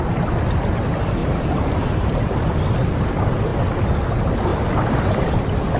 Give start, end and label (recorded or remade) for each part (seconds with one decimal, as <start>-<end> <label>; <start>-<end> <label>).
0.0-1.2 recorded; 1.2-2.5 remade; 2.5-4.5 recorded; 4.5-5.3 remade; 5.3-5.8 recorded